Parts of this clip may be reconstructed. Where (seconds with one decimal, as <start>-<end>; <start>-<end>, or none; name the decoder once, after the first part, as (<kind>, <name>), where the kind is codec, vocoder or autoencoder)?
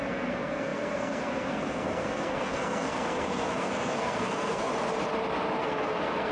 0.0-4.7 (codec, SNAC); 5.6-6.3